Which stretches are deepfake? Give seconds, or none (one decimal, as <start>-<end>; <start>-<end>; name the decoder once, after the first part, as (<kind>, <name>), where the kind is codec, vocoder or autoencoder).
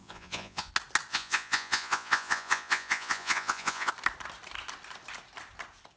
0.0-0.7 (vocoder, Vocos); 1.1-3.9